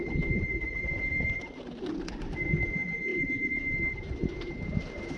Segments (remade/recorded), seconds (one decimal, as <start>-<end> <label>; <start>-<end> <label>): 0.0-0.5 recorded; 0.5-1.6 remade; 1.6-3.1 recorded; 3.1-4.5 remade; 4.5-5.2 recorded